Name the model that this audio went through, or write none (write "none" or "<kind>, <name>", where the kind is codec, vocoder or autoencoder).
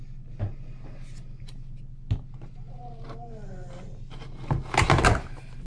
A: none